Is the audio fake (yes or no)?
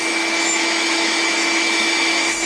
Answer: yes